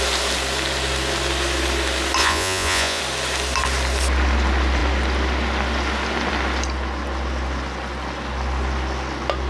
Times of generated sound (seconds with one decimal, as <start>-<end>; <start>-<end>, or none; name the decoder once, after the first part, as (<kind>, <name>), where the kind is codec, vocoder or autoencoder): 2.2-3.0 (vocoder, Vocos)